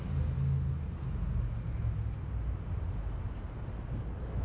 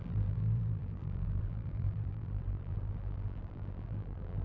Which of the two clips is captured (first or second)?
first